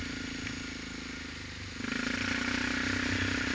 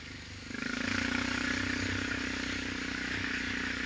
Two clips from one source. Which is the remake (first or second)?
second